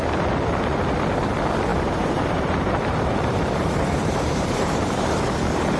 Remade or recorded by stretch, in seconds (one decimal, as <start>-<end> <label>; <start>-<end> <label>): 0.0-1.7 recorded; 1.7-5.2 remade; 5.2-5.8 recorded